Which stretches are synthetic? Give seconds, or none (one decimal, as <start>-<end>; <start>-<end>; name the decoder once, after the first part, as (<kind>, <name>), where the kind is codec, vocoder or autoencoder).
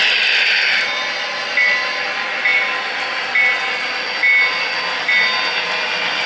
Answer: none